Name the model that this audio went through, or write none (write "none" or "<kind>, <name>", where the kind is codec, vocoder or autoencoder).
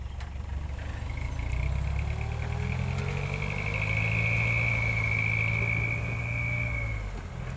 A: none